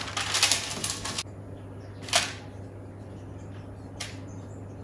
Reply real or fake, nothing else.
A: real